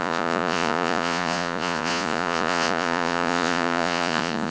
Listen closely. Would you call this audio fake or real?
fake